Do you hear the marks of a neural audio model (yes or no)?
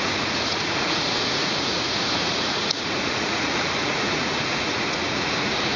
yes